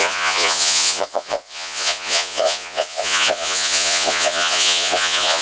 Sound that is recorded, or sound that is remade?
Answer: remade